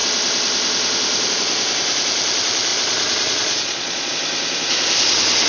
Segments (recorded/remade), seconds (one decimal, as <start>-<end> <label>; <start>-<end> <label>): 0.0-2.7 recorded; 2.7-4.1 remade; 4.1-5.5 recorded